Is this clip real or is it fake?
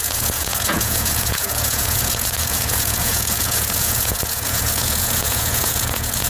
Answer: fake